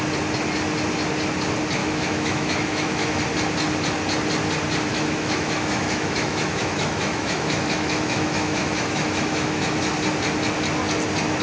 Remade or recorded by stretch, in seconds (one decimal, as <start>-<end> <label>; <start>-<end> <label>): 0.0-1.8 recorded; 1.8-3.2 remade; 3.2-4.9 recorded; 4.9-9.8 remade; 9.8-11.4 recorded

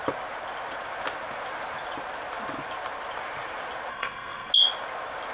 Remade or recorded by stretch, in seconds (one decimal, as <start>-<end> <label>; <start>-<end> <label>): 0.0-3.9 recorded; 3.9-4.5 remade; 4.5-5.3 recorded

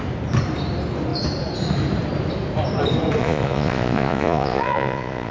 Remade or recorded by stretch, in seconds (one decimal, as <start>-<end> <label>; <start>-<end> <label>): 0.0-3.2 recorded; 3.2-5.3 remade

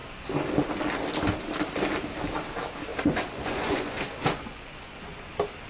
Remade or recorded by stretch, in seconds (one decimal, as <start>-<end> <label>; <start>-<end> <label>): 0.0-2.9 recorded; 2.9-5.3 remade; 5.3-5.7 recorded

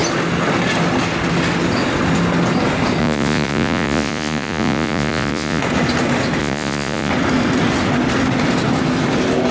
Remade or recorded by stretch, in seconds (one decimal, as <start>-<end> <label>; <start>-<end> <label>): 0.0-3.0 recorded; 3.0-5.6 remade; 5.6-6.4 recorded; 6.4-7.1 remade; 7.1-9.5 recorded